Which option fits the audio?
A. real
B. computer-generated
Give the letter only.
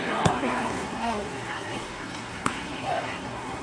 B